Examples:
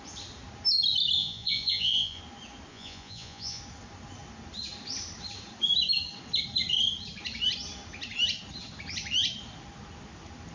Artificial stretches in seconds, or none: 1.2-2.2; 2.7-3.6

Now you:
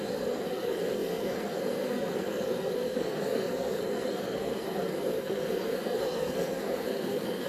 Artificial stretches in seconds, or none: 0.0-7.5

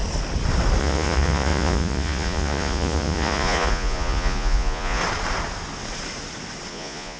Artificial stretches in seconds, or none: 0.8-5.0; 6.7-7.2

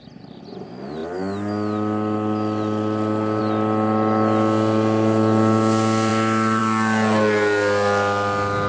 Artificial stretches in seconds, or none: none

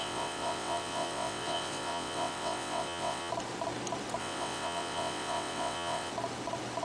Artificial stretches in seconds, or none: 0.0-3.3; 4.2-6.1

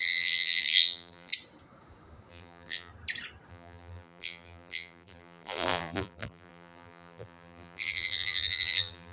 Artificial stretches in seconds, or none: 0.0-1.3; 2.3-2.9; 3.5-9.1